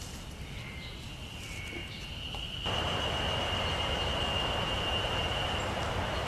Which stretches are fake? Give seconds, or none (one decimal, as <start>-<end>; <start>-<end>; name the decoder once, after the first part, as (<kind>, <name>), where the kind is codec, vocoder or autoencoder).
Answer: none